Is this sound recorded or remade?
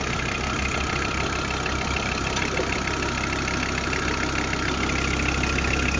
recorded